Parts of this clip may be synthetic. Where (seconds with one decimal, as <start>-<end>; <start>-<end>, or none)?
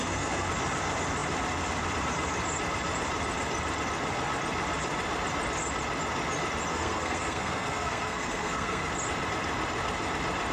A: 0.0-0.5; 6.7-8.9